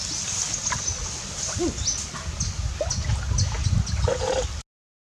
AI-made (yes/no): no